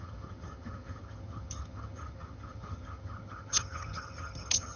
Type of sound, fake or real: fake